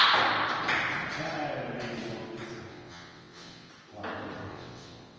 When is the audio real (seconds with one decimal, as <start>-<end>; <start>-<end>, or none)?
0.0-2.7; 3.7-4.5